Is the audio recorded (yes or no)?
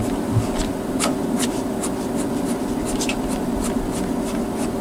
yes